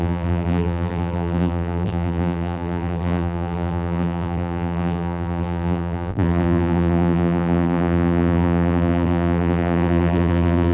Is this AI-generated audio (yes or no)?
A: yes